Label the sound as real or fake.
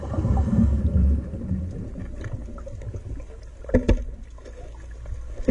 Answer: real